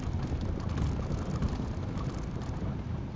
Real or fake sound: real